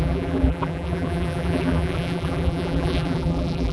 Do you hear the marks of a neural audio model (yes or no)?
yes